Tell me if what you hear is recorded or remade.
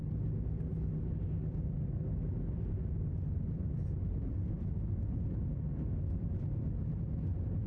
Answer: recorded